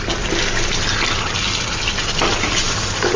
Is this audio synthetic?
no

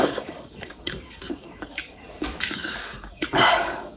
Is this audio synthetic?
yes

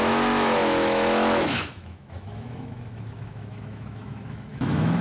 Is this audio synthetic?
yes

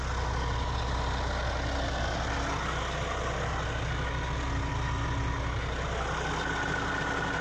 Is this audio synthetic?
no